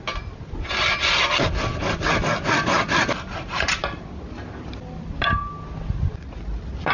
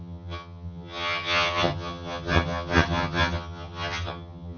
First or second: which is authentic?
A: first